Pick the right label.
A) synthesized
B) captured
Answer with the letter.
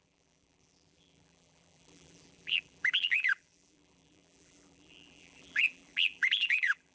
A